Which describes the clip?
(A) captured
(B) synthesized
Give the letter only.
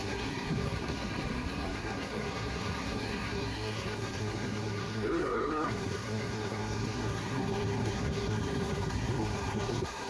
B